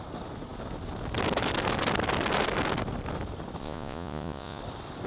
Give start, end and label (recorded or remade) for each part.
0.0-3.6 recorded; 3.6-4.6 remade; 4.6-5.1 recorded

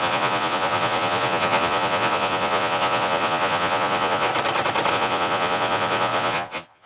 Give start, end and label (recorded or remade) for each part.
0.0-4.3 remade; 4.3-4.9 recorded; 4.9-6.9 remade

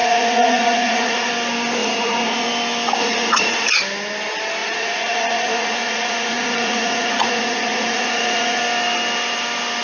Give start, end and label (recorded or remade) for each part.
0.0-1.3 remade; 1.3-1.8 recorded; 1.8-2.5 remade; 2.5-3.0 recorded; 3.0-3.7 remade; 3.7-4.6 recorded; 4.6-8.6 remade; 8.6-9.8 recorded

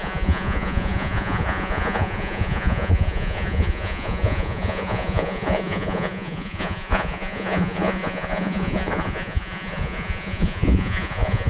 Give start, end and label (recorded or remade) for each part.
0.0-11.5 remade